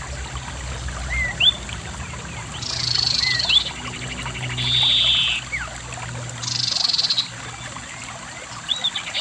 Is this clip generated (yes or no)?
no